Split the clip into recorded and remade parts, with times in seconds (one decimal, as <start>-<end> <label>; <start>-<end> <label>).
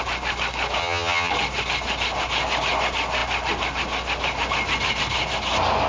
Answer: 0.0-0.8 recorded; 0.8-1.3 remade; 1.3-5.9 recorded